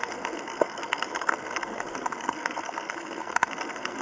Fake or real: fake